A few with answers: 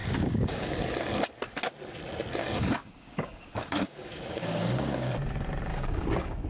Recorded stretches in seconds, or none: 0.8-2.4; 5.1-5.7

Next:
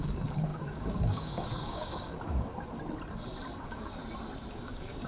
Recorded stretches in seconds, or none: 2.5-3.6; 4.0-4.5